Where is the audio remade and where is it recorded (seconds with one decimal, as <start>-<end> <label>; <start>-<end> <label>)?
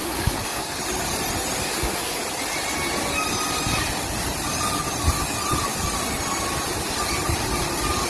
0.0-0.8 remade; 0.8-1.7 recorded; 1.7-2.2 remade; 2.2-8.1 recorded